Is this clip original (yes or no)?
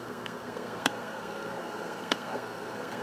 no